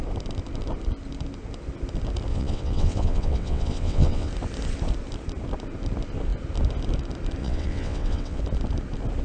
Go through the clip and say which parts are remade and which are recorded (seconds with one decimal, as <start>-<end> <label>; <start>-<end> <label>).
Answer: 0.0-2.3 recorded; 2.3-4.3 remade; 4.3-7.4 recorded; 7.4-8.4 remade; 8.4-9.2 recorded